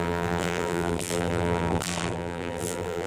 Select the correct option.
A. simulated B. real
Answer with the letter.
A